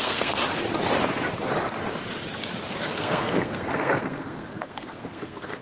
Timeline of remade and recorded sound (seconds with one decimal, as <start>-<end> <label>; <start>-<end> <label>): 0.0-0.4 remade; 0.4-2.8 recorded; 2.8-5.6 remade